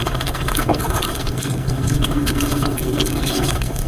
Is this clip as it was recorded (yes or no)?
no